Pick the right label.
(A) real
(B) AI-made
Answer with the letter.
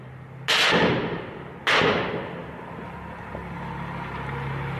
A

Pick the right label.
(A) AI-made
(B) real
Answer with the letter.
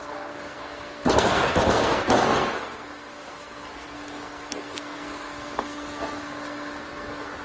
A